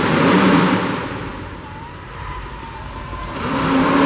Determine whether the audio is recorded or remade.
remade